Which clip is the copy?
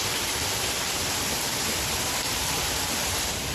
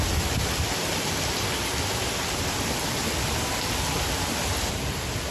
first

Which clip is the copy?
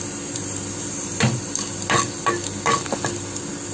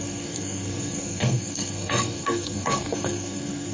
second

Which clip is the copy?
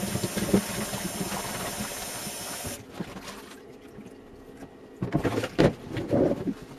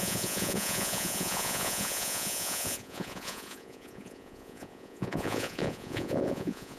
second